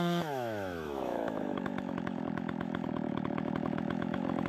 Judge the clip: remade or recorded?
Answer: remade